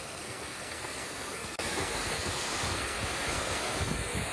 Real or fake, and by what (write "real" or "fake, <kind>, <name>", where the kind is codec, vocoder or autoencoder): fake, codec, SNAC